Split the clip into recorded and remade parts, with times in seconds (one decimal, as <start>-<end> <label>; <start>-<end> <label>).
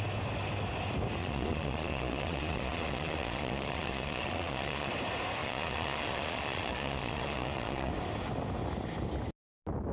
0.0-1.2 recorded; 1.2-4.9 remade; 4.9-5.4 recorded; 5.4-7.9 remade; 7.9-9.9 recorded